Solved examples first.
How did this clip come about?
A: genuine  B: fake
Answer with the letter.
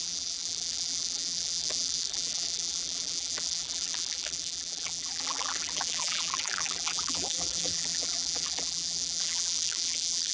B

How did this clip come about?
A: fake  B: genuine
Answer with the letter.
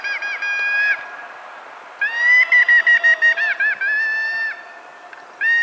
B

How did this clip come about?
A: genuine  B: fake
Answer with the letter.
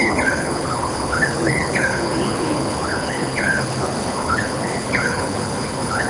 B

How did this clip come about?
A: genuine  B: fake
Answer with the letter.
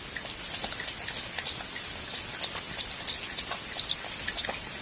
A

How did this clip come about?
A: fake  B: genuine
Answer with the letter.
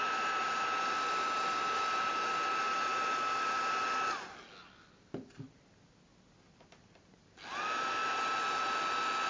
B